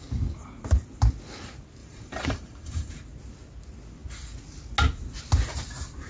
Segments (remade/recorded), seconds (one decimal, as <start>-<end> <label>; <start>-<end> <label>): 0.0-1.8 recorded; 1.8-2.9 remade; 2.9-6.1 recorded